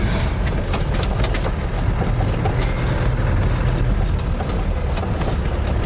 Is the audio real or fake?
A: real